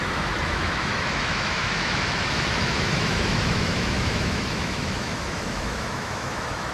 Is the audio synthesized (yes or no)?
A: yes